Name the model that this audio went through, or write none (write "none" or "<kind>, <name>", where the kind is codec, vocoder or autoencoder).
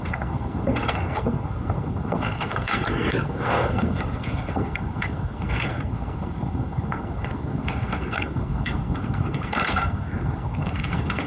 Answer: codec, SNAC